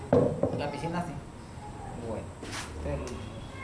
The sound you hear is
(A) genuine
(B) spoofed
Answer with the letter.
A